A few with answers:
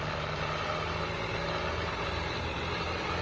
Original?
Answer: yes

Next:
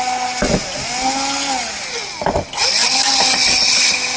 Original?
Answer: yes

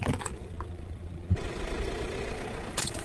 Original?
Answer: no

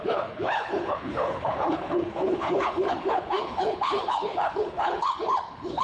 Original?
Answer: no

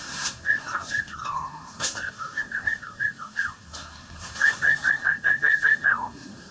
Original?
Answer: no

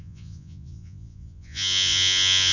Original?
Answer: no